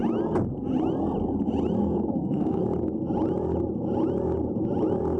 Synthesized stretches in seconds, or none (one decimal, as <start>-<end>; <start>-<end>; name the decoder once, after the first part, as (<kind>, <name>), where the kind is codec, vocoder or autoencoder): 1.8-2.6 (codec, SNAC)